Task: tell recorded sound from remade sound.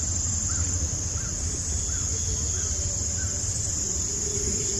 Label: recorded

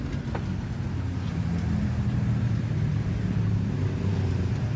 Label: recorded